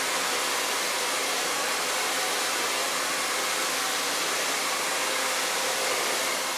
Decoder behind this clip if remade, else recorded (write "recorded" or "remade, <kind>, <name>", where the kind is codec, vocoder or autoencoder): recorded